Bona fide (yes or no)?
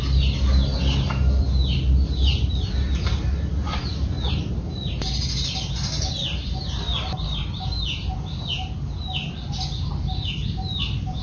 yes